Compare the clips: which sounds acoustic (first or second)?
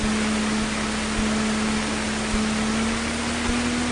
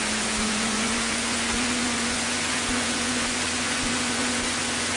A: first